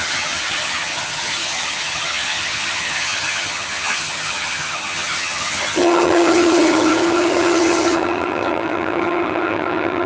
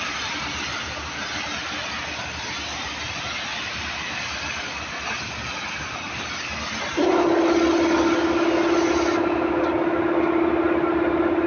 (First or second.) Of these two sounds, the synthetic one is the first